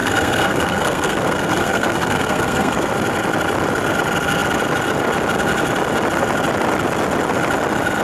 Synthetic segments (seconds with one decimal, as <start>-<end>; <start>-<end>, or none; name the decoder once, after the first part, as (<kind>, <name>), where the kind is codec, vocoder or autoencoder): 0.0-2.9 (codec, SNAC)